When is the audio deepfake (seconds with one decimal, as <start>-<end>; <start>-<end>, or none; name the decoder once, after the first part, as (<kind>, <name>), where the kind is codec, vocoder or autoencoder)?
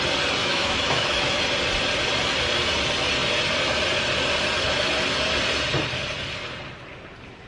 0.4-1.4 (autoencoder, DAC-VAE)